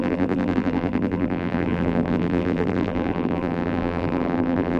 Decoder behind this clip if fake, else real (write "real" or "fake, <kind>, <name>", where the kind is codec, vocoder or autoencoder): fake, vocoder, BigVGAN v2